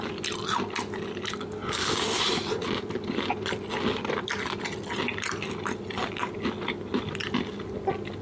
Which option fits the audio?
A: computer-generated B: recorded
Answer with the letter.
B